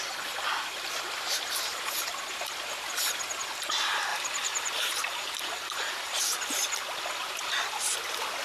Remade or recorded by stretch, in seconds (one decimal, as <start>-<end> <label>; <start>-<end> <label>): 0.0-4.1 recorded; 4.1-6.2 remade; 6.2-8.4 recorded